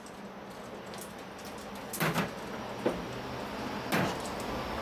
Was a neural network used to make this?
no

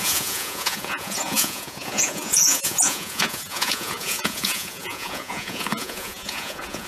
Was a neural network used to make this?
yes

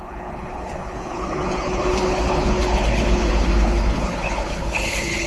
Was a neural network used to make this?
yes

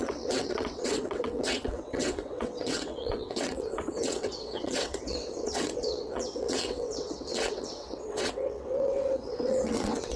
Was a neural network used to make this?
yes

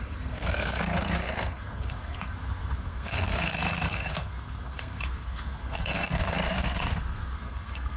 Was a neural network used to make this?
yes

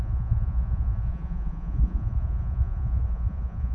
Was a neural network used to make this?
yes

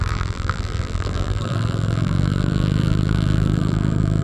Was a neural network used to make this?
yes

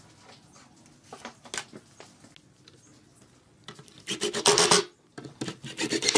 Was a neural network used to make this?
no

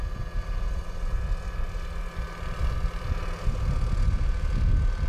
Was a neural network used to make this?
no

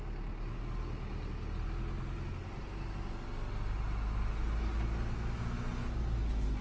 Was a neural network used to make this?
no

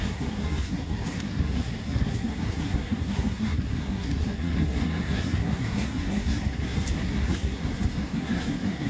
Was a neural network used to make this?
yes